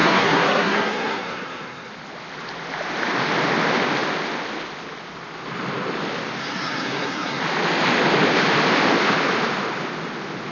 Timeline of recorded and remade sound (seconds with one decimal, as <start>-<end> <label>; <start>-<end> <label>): 0.0-1.9 remade; 1.9-6.4 recorded; 6.4-7.4 remade; 7.4-10.5 recorded